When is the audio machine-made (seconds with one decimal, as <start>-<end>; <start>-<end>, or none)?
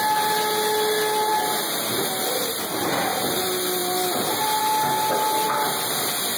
3.8-4.6